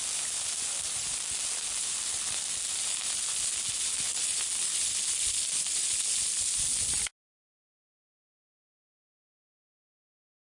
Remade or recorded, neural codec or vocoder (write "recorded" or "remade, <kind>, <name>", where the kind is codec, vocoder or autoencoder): recorded